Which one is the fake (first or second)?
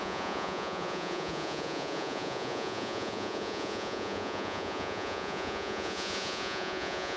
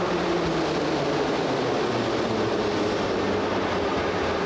first